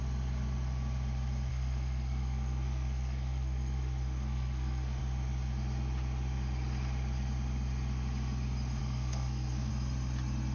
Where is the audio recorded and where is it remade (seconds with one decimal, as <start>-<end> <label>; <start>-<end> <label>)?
0.0-1.5 recorded; 1.5-5.0 remade; 5.0-8.8 recorded; 8.8-9.7 remade; 9.7-10.5 recorded